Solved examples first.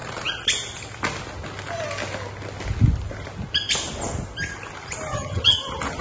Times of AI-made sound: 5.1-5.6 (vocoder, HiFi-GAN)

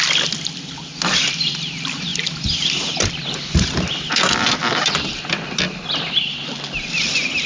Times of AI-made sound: 2.1-4.2 (vocoder, BigVGAN v2)

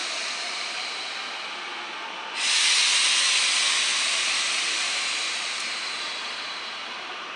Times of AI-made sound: 0.0-1.2 (vocoder, BigVGAN v2); 3.9-7.4

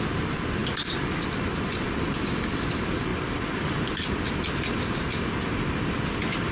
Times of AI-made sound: 3.1-6.5 (vocoder, BigVGAN v2)

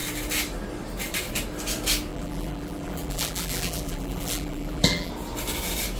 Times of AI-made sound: 2.1-5.1 (vocoder, BigVGAN v2)

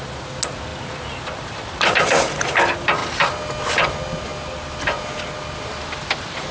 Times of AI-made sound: none

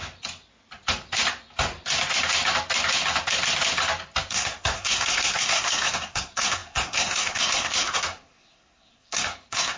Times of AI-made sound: 4.3-9.8 (codec, SNAC)